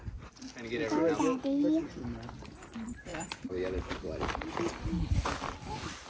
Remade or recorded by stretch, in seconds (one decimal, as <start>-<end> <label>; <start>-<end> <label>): 0.0-6.1 recorded